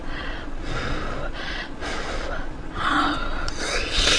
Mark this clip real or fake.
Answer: fake